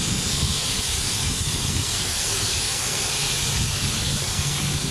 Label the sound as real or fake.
fake